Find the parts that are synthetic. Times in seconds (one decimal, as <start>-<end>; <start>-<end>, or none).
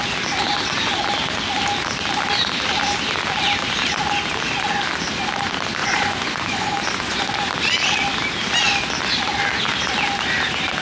5.8-7.5